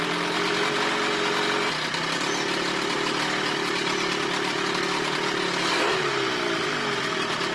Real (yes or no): yes